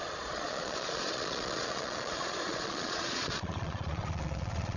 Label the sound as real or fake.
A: fake